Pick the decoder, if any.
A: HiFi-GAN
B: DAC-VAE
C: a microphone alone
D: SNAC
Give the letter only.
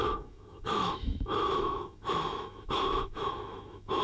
B